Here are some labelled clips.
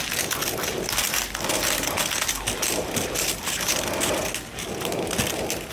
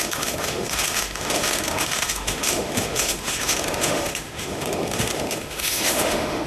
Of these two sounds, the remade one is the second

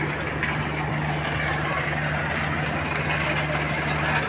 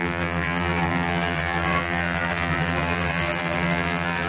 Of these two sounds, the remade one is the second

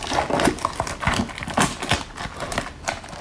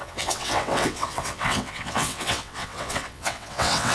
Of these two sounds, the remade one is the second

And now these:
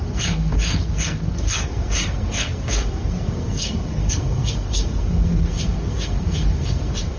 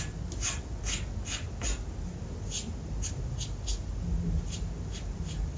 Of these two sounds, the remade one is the first